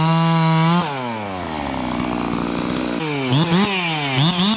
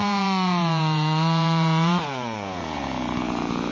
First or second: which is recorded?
first